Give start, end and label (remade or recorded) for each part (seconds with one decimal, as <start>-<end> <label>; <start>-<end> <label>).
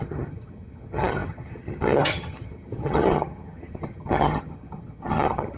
0.0-5.6 remade